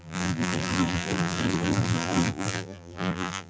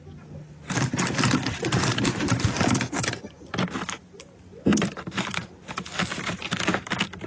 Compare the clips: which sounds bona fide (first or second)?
second